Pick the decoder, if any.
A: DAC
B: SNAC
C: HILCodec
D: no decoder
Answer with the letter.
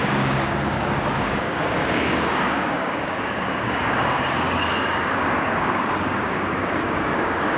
A